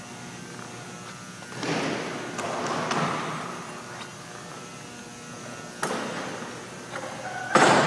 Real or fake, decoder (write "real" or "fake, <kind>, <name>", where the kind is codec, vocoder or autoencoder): real